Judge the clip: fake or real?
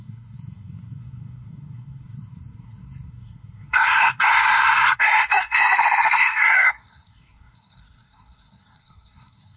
fake